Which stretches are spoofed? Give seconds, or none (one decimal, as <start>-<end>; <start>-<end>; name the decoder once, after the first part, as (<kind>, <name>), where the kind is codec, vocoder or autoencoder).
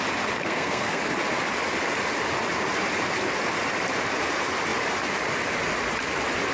0.4-1.0 (codec, SNAC)